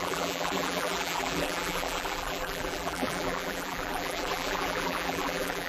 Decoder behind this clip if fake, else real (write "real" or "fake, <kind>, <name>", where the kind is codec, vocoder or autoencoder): fake, vocoder, BigVGAN v2